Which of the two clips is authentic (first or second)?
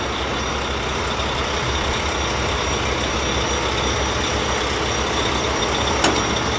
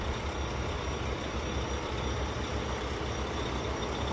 first